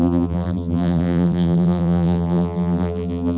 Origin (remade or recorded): remade